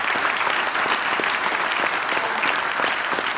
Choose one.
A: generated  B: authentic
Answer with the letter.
B